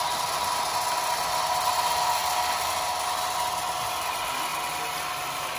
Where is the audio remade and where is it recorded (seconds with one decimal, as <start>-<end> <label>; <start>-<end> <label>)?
0.0-5.6 recorded